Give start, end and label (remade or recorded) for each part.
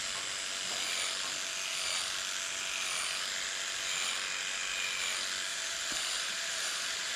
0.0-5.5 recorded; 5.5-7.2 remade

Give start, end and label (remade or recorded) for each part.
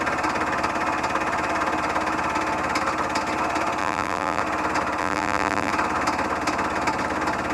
0.0-3.8 recorded; 3.8-4.4 remade; 4.4-5.0 recorded; 5.0-5.7 remade; 5.7-7.5 recorded